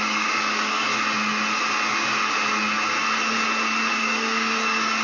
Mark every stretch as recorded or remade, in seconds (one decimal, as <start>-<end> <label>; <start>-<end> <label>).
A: 0.0-0.9 remade; 0.9-3.9 recorded; 3.9-5.0 remade